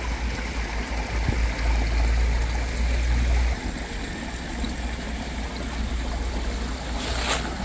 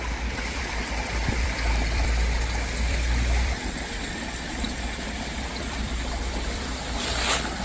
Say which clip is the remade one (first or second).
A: second